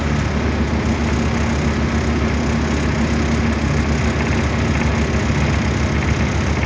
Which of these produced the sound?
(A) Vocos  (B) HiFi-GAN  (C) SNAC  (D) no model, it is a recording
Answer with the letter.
D